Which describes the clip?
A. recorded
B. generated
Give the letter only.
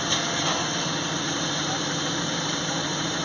B